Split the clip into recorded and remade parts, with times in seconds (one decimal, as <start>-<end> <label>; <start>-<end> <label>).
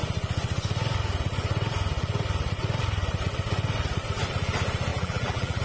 0.0-4.9 recorded; 4.9-5.6 remade